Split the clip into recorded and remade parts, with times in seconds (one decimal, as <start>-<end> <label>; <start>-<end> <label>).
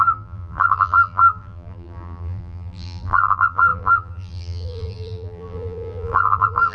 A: 0.0-6.7 remade